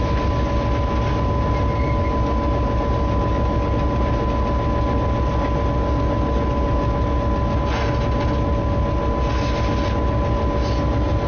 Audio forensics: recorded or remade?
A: recorded